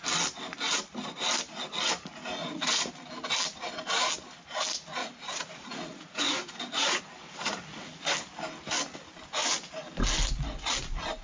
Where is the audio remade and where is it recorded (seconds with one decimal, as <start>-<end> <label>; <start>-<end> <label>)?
0.0-2.4 recorded; 2.4-2.9 remade; 2.9-5.0 recorded; 5.0-7.0 remade; 7.0-11.2 recorded